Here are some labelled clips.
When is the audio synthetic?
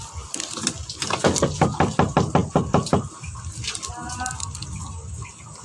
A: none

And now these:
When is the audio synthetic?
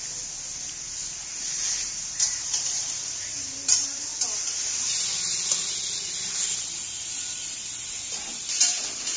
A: 2.1-4.1 (vocoder, BigVGAN v2); 8.1-8.7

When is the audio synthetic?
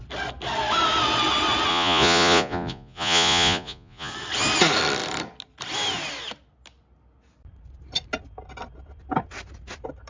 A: 1.7-4.1 (vocoder, Vocos)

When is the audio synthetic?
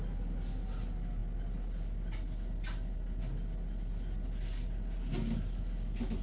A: none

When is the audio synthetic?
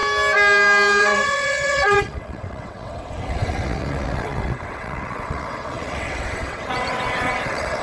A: 1.0-7.8 (vocoder, WaveNeXt)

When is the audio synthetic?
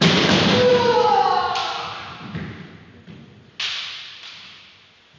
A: none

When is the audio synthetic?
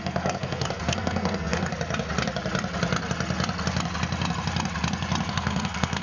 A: 0.0-1.7 (codec, SNAC); 5.3-6.0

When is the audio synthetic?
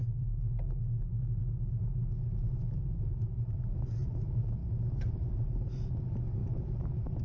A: 2.5-7.2 (vocoder, BigVGAN v2)